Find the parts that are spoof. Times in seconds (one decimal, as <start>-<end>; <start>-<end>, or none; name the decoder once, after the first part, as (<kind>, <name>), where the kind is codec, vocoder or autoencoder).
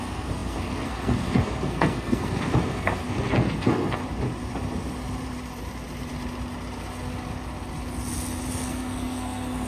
0.0-4.0 (codec, SNAC); 8.5-9.7